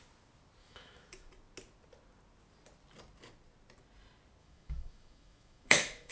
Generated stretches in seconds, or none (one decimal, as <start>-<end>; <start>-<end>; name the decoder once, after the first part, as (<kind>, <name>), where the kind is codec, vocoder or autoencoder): 0.6-1.3 (autoencoder, DAC-VAE); 4.4-6.1